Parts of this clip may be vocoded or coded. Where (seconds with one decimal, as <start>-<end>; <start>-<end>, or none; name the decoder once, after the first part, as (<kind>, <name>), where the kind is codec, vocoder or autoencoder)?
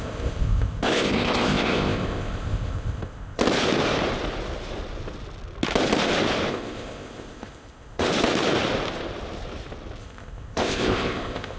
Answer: 0.0-3.4 (codec, ZipCodec); 6.5-8.1; 10.0-11.6